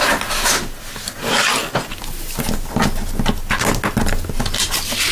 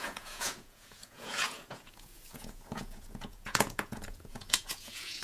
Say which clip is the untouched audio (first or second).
first